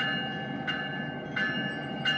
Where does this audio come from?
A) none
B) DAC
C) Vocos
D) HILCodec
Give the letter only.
A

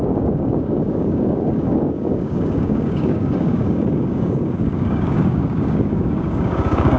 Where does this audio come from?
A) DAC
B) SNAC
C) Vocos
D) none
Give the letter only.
A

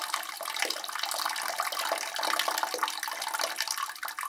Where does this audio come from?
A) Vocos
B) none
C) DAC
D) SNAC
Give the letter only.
B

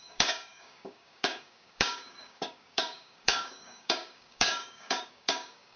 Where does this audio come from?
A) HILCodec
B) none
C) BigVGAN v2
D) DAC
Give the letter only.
D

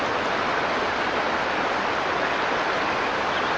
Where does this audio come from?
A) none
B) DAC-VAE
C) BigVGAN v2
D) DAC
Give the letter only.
A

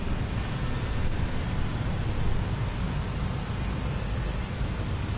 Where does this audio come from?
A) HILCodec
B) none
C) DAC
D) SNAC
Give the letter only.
B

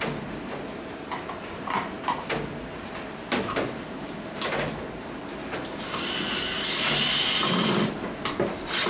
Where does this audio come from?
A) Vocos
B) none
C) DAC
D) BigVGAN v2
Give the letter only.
B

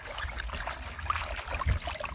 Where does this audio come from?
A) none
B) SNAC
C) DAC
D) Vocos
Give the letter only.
A